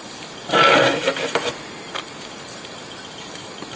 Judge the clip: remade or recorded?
recorded